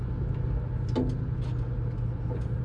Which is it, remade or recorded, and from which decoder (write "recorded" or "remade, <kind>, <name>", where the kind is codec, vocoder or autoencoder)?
recorded